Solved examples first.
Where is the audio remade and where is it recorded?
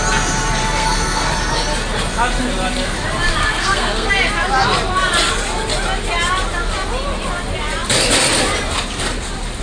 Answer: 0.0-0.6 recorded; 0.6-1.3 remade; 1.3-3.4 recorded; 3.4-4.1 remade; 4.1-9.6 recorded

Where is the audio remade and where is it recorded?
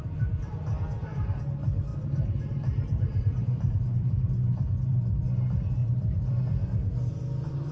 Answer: 0.0-1.9 recorded; 1.9-5.2 remade; 5.2-5.8 recorded; 5.8-6.4 remade; 6.4-7.7 recorded